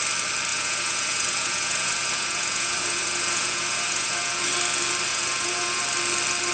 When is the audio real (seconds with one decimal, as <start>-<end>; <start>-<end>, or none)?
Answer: 0.0-0.5; 4.4-5.1; 5.8-6.5

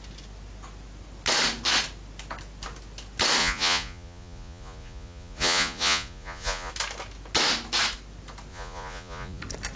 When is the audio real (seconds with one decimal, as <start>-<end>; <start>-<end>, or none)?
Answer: 0.0-3.4; 6.7-8.5; 9.4-9.8